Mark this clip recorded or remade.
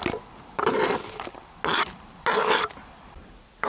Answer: recorded